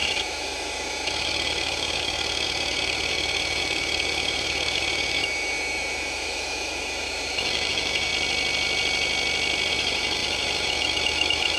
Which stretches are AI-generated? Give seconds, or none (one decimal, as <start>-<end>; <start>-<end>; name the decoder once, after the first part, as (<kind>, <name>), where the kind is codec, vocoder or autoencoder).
0.0-8.1 (autoencoder, DAC-VAE); 9.7-11.6